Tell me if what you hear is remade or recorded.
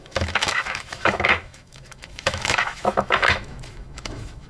remade